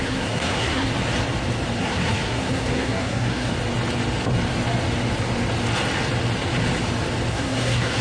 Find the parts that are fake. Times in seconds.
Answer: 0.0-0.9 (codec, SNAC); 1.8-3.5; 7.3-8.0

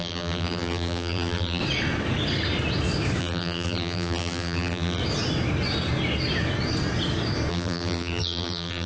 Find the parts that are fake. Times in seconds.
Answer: 0.0-1.6 (vocoder, BigVGAN v2); 3.2-5.0; 7.5-8.9

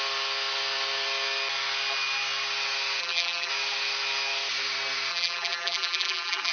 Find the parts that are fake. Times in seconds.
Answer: 3.0-3.5 (vocoder, BigVGAN v2); 5.1-6.5

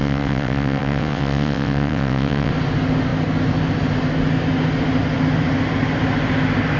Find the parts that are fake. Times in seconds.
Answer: 0.0-2.5 (vocoder, WaveNeXt)

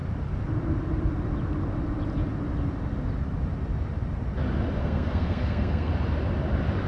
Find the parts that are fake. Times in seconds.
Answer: 4.8-5.9 (codec, SNAC)

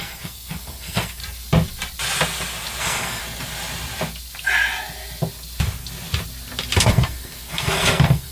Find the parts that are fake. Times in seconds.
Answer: 0.0-1.2 (codec, SNAC); 2.8-3.2; 6.8-8.3

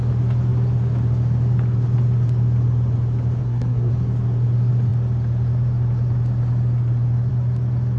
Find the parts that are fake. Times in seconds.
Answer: 3.4-3.9 (codec, SNAC)

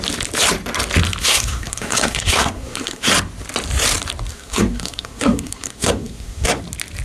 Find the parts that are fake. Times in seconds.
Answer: 1.2-3.1 (codec, SNAC); 4.3-6.6